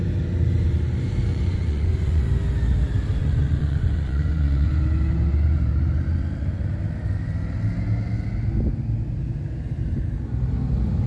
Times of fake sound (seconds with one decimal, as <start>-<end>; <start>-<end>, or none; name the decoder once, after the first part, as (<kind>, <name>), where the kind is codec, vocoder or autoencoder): 1.3-2.2 (vocoder, Vocos); 3.2-4.7